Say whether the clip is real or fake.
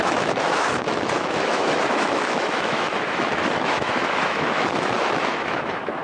fake